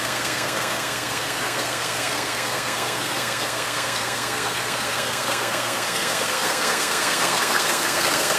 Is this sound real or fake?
fake